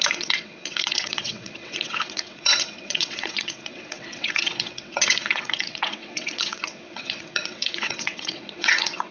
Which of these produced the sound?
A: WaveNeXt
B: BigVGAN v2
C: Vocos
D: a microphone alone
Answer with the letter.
A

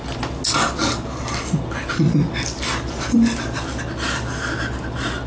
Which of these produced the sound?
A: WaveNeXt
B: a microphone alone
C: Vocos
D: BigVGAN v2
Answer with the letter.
B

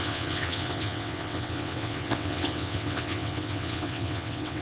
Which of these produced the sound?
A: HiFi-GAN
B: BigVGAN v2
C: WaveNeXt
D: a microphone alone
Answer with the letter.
C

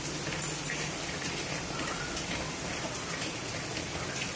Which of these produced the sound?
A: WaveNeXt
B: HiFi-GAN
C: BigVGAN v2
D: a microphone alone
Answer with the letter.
D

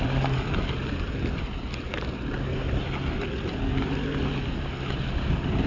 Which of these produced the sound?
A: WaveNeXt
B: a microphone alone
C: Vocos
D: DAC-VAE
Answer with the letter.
B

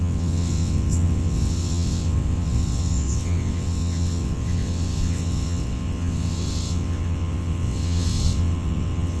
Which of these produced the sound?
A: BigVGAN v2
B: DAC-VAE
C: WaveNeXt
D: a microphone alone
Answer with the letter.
C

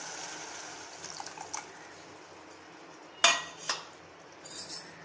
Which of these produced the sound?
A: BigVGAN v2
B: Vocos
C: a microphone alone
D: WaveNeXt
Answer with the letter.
C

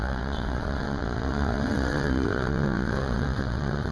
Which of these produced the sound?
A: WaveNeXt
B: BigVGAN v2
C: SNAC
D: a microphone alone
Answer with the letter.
A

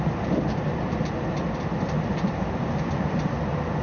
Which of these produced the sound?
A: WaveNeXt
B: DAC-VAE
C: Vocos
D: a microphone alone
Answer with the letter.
D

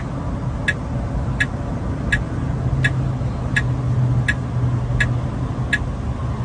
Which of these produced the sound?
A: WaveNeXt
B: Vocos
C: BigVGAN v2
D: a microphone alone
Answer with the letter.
D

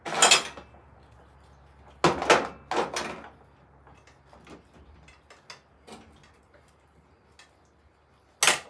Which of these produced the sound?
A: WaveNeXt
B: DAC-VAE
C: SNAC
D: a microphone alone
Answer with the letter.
D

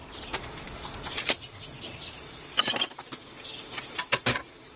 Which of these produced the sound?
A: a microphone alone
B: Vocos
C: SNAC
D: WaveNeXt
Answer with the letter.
A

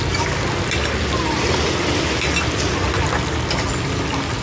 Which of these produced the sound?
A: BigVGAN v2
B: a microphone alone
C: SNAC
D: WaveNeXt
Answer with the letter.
B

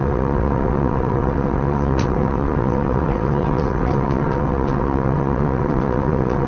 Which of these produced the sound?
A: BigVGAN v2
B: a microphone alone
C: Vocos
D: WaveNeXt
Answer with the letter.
D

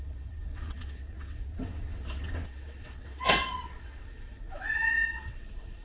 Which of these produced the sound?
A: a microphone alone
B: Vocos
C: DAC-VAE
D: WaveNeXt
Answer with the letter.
D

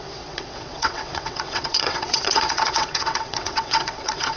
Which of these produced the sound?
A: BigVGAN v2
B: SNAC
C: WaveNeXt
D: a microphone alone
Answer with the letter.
C